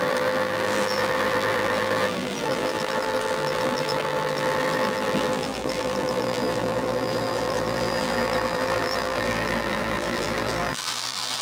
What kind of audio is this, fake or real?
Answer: fake